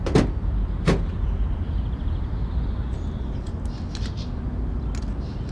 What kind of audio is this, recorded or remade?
recorded